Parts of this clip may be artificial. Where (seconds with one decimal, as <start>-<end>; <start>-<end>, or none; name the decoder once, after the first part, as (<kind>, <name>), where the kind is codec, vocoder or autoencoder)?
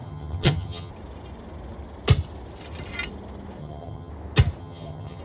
0.0-0.9 (vocoder, HiFi-GAN); 3.6-4.1; 4.6-5.2